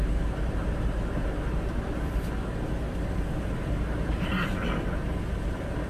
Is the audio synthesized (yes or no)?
no